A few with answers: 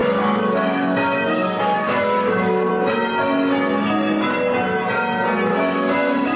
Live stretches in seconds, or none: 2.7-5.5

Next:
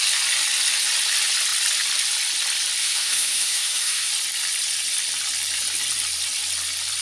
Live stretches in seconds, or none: 0.0-2.8; 4.1-7.0

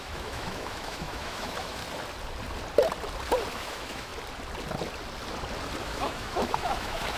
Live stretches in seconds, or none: 1.8-3.5; 4.1-5.8

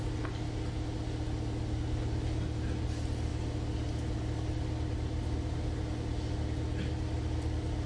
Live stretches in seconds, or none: 0.0-7.9

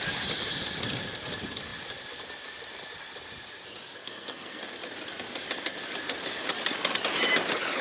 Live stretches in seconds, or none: 0.0-4.0; 4.6-7.8

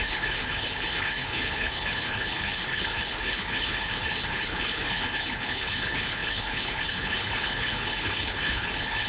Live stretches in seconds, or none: none